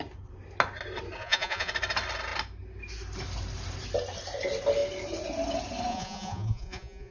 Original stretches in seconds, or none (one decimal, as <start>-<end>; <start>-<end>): 0.0-1.2; 1.7-5.9